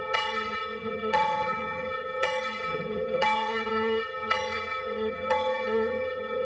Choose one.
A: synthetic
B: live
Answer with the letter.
A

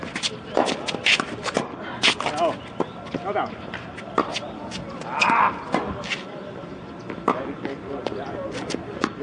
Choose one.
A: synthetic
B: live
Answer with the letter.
B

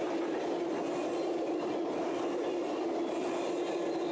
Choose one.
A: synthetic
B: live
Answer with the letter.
B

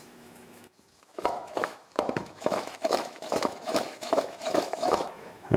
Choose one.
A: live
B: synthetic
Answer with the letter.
B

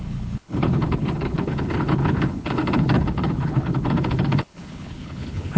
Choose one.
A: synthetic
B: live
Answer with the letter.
A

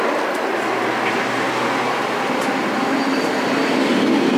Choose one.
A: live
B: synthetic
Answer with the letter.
A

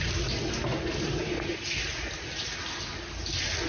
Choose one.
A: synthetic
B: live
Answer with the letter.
B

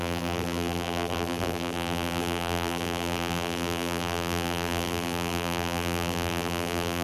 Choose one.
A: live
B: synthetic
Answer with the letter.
B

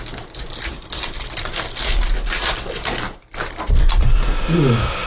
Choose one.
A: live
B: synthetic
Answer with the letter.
A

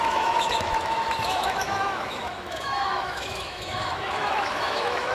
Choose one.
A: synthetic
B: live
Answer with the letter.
A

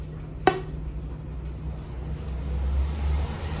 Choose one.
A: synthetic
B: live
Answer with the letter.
B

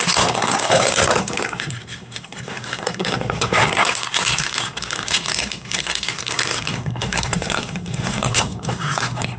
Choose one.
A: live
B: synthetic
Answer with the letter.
B